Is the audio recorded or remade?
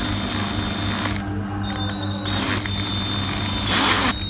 recorded